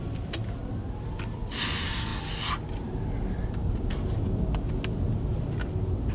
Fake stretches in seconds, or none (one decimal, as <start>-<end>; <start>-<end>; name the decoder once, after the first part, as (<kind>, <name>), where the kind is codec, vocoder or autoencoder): none